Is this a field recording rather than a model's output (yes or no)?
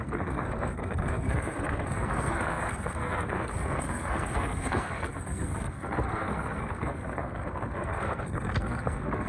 no